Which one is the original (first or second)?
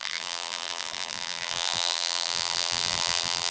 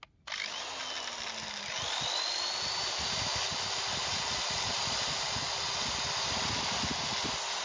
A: second